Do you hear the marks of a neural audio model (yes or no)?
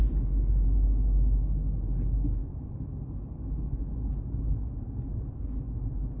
no